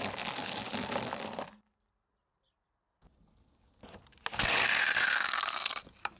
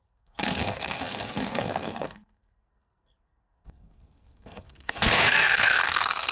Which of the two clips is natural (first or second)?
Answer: first